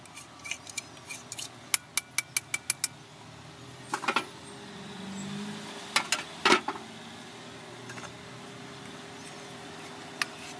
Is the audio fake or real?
real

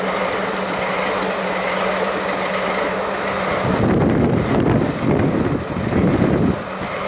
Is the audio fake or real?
real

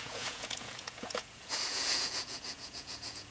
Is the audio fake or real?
fake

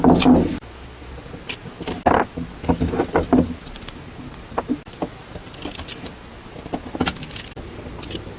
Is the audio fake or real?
real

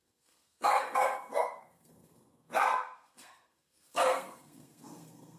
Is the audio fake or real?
fake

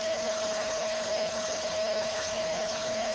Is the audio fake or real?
fake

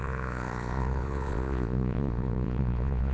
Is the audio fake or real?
fake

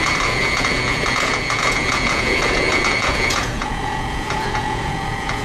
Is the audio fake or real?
fake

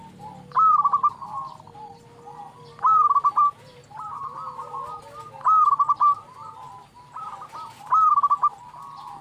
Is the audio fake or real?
real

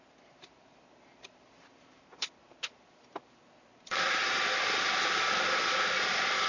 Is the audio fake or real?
fake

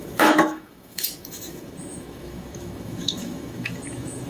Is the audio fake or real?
fake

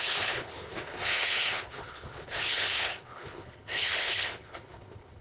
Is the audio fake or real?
fake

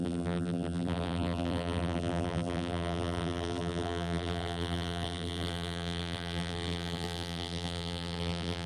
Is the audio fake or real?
fake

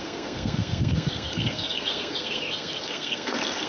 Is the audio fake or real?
fake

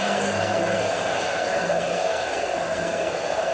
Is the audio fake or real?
fake